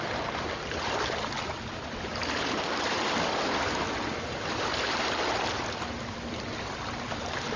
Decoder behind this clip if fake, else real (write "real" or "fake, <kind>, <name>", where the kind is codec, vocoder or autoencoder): real